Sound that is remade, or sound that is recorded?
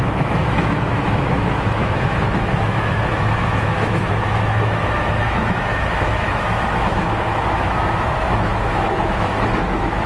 remade